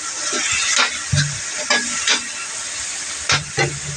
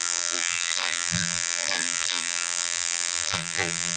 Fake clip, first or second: second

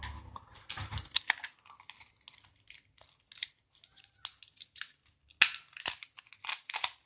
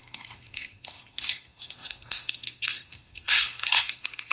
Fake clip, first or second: second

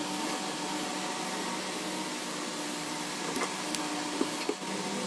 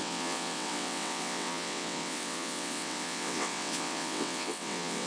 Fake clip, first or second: second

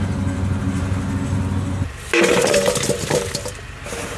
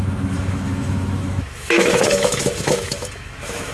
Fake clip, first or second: second